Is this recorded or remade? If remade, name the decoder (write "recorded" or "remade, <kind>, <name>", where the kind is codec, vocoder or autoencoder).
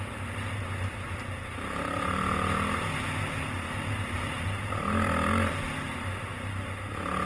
recorded